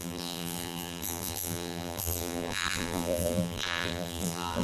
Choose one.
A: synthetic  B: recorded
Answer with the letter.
A